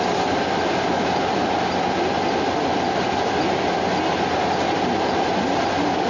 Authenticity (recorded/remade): recorded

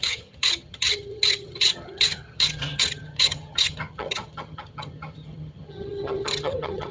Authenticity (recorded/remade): remade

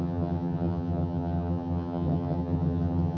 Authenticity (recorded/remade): remade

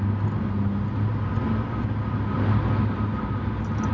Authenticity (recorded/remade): recorded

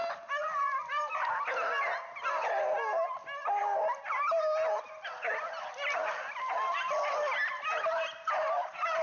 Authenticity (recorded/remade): recorded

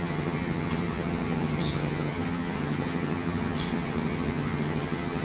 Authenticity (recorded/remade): remade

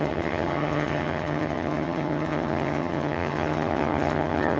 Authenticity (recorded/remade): remade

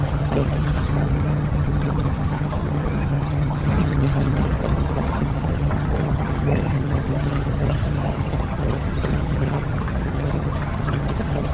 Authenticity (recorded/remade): remade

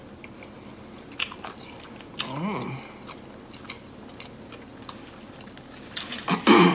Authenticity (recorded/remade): recorded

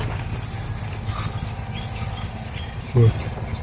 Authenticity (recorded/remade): recorded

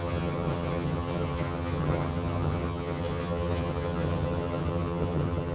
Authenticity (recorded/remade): remade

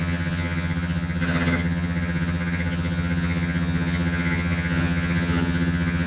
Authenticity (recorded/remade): remade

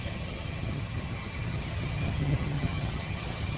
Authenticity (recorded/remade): remade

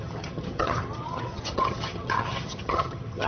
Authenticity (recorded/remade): remade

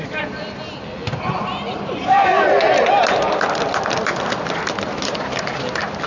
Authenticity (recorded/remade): recorded